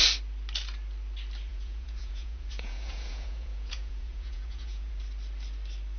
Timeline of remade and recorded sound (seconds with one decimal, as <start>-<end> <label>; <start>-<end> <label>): 0.0-1.5 recorded; 1.5-5.0 remade; 5.0-6.0 recorded